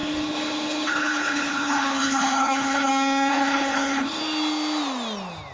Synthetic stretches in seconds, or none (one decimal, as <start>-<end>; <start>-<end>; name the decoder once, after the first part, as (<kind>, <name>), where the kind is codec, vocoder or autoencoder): 0.0-2.9 (codec, HILCodec); 3.3-4.2